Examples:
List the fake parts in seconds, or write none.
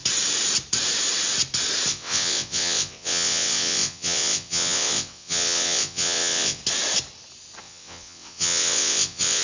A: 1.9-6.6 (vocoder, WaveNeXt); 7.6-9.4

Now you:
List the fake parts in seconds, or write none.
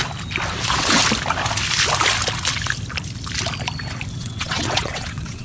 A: 0.5-1.0 (vocoder, WaveNeXt); 4.2-5.4